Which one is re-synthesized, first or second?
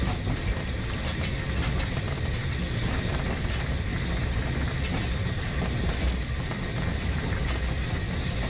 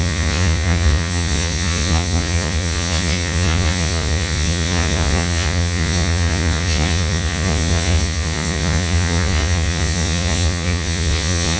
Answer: second